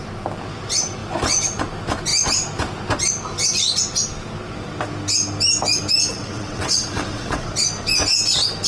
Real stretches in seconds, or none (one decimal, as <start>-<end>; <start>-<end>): 0.0-6.1; 7.5-8.7